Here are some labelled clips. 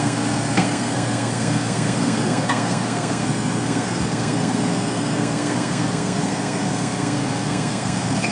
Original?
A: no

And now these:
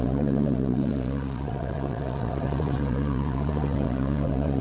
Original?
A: no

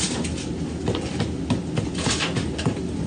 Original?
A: yes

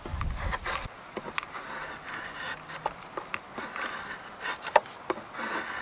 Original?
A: yes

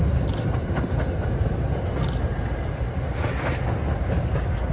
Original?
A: yes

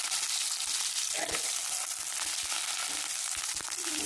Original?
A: yes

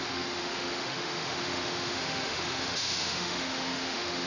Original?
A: no